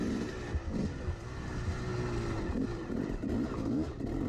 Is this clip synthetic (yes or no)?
no